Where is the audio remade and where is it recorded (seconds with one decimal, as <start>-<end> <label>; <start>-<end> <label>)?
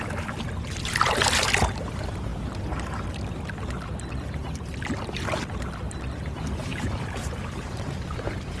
0.0-6.7 recorded; 6.7-7.8 remade; 7.8-8.6 recorded